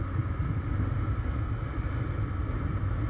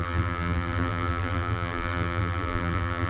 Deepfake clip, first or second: second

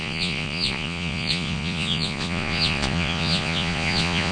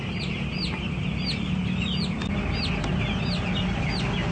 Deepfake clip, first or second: first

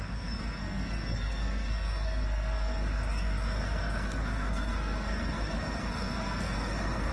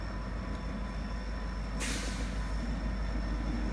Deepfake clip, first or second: first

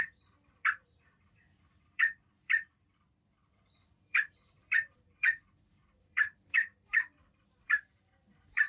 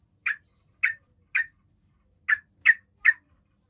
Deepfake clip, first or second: first